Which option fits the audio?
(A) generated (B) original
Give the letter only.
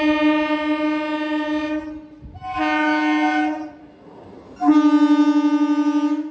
B